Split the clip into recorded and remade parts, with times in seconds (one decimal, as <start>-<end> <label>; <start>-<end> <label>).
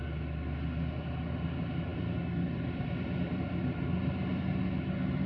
0.0-1.9 recorded; 1.9-4.4 remade; 4.4-5.3 recorded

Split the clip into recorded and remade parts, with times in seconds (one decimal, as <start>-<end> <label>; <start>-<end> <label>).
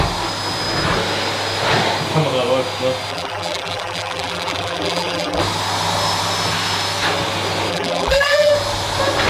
0.0-3.1 recorded; 3.1-5.4 remade; 5.4-7.7 recorded; 7.7-8.5 remade; 8.5-9.3 recorded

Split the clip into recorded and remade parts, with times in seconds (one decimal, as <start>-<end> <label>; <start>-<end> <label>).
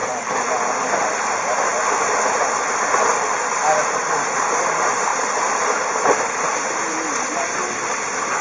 0.0-0.5 remade; 0.5-5.1 recorded; 5.1-7.6 remade; 7.6-8.4 recorded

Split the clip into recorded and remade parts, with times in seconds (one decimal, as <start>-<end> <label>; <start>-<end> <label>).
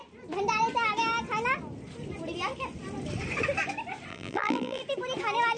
0.0-4.1 recorded; 4.1-4.8 remade; 4.8-5.6 recorded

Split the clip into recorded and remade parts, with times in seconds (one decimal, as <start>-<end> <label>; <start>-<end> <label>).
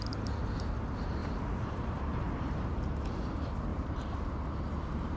0.0-1.2 recorded; 1.2-2.1 remade; 2.1-3.7 recorded; 3.7-5.2 remade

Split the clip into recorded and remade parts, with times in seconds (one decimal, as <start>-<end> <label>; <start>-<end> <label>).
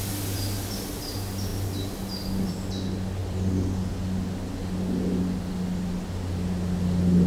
0.0-3.2 recorded; 3.2-3.9 remade; 3.9-7.3 recorded